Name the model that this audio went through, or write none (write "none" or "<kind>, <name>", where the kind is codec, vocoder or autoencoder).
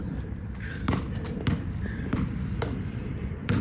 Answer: vocoder, BigVGAN v2